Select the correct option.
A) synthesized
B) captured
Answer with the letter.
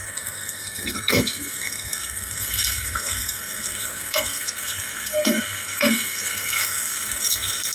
A